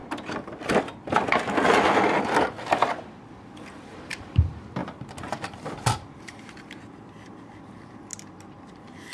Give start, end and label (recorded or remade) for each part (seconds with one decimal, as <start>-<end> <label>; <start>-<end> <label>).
0.0-0.8 recorded; 0.8-8.1 remade; 8.1-8.7 recorded; 8.7-9.1 remade